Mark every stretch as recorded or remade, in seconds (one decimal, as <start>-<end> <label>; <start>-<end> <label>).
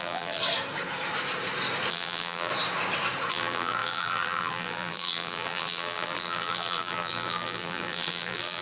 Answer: 0.0-0.4 remade; 0.4-1.9 recorded; 1.9-2.5 remade; 2.5-3.3 recorded; 3.3-8.6 remade